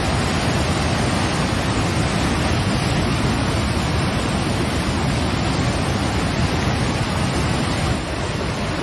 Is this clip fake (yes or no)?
no